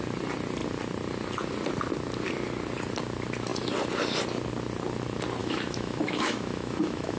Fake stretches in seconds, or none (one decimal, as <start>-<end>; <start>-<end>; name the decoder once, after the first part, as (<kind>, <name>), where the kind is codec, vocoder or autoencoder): 5.4-7.2 (autoencoder, DAC-VAE)

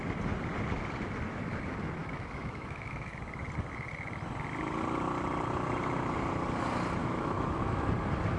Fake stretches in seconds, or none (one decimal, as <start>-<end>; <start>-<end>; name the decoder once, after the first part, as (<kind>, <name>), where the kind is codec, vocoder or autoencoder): 2.0-3.2 (autoencoder, DAC-VAE); 7.0-7.9

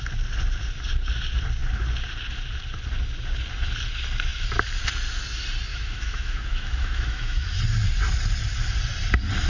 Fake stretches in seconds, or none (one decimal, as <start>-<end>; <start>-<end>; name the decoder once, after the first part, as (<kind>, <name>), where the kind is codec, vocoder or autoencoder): 5.7-7.6 (autoencoder, DAC-VAE)

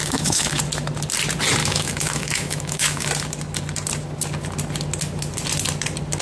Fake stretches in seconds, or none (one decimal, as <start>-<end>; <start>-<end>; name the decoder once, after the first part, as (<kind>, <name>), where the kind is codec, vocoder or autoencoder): 0.0-0.6 (autoencoder, DAC-VAE); 1.6-3.1

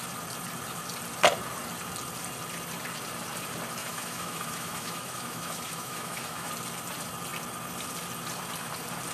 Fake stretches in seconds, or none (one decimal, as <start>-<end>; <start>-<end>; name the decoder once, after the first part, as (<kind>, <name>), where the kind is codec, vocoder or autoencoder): 3.8-6.5 (autoencoder, DAC-VAE)

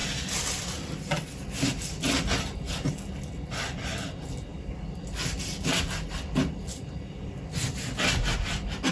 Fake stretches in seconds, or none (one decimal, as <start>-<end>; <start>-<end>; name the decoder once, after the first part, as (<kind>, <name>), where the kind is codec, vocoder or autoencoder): none

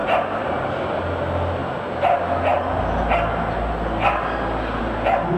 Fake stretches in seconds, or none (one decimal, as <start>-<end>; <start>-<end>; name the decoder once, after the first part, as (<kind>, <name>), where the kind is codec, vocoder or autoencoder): none